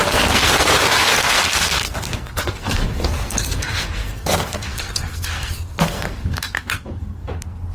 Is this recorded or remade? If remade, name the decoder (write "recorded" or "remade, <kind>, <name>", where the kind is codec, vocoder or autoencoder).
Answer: remade, codec, SNAC